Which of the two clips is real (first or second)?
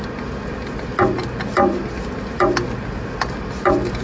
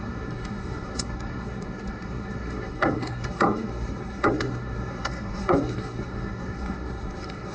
first